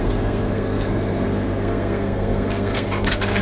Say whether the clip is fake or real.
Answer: fake